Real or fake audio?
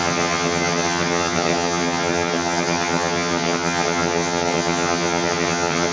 fake